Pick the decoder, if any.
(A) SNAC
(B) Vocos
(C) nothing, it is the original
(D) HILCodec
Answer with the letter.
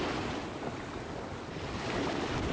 C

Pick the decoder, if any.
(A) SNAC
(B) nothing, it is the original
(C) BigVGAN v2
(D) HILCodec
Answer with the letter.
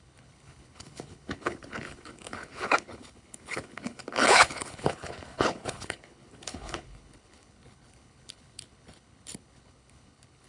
D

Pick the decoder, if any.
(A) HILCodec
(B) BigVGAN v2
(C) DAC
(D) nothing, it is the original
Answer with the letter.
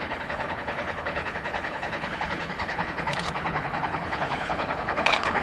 A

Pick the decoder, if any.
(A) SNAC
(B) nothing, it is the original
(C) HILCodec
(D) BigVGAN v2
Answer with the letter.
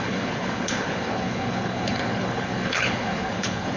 C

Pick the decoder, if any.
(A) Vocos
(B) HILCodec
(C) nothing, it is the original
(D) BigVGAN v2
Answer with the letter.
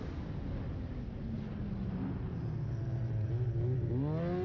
C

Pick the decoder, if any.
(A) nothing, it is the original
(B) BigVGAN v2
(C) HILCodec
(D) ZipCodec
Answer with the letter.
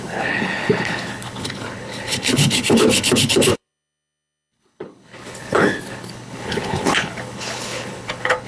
C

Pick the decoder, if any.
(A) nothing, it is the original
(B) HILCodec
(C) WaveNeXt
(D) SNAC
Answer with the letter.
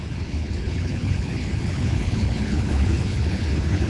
B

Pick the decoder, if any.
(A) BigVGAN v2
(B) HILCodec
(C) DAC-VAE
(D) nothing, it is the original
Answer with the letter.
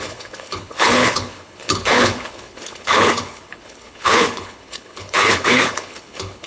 B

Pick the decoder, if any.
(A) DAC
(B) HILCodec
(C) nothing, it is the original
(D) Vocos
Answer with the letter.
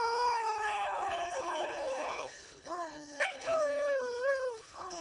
B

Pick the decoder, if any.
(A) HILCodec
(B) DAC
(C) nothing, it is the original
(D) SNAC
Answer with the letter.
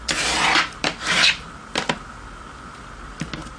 C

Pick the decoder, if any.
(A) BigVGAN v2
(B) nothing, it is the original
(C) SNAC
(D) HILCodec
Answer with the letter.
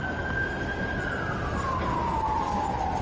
B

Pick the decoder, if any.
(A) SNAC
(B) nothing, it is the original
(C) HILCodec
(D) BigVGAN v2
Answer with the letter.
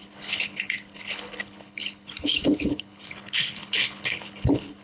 C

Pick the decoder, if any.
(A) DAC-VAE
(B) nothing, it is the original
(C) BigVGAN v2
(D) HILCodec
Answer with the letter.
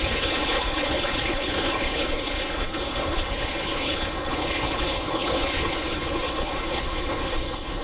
D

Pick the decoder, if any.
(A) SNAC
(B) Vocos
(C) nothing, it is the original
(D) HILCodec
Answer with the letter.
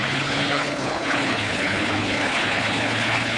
D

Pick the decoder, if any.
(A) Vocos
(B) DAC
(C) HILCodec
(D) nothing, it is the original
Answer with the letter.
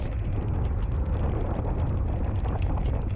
D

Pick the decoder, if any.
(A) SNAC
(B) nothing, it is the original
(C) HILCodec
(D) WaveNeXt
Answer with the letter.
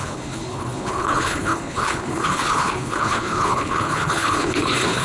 C